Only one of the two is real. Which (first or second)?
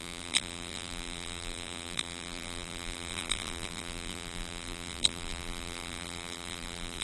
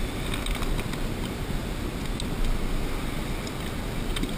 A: second